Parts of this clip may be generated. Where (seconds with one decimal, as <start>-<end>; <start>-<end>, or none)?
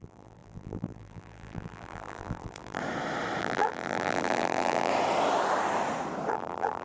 0.0-2.8; 3.4-4.9; 6.3-6.8